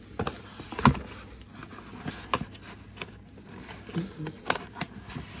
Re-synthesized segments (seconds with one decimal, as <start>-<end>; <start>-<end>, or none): none